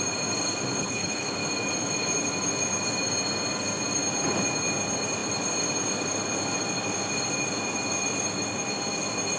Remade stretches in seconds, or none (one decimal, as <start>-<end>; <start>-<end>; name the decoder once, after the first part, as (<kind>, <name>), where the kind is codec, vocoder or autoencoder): 0.8-1.3 (codec, HILCodec)